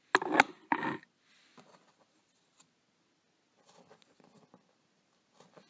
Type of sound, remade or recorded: recorded